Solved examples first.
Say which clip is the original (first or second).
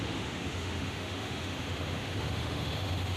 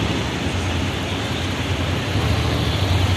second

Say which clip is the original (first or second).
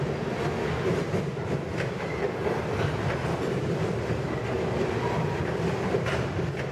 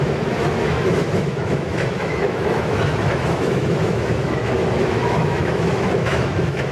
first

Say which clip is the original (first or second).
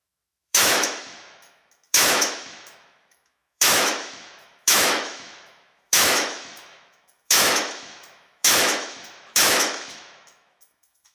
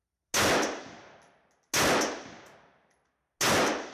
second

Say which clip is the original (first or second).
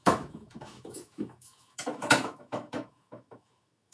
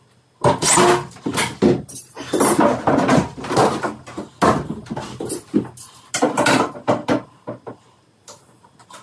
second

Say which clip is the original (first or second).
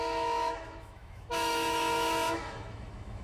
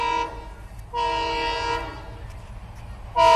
second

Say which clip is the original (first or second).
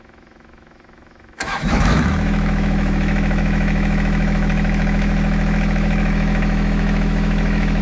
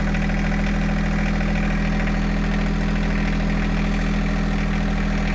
second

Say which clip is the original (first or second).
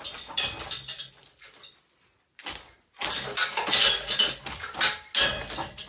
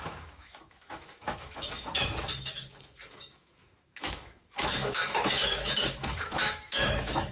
first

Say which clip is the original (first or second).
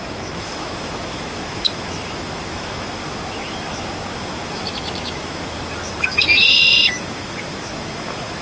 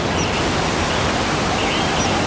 second